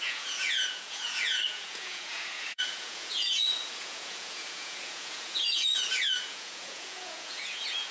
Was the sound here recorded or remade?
remade